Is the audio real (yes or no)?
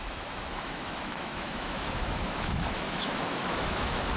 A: no